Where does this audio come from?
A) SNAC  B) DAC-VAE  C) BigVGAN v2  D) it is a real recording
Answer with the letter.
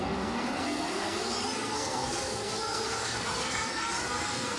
A